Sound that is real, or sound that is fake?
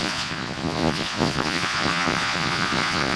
fake